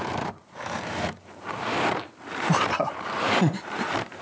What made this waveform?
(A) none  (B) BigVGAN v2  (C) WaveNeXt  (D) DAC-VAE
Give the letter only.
B